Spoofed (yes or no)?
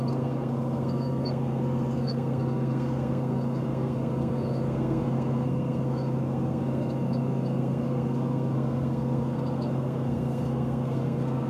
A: yes